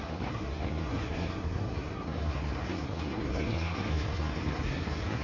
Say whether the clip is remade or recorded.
remade